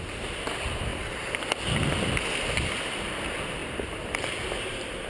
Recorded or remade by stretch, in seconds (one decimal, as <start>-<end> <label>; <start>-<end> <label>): 0.0-0.9 recorded; 0.9-1.4 remade; 1.4-5.1 recorded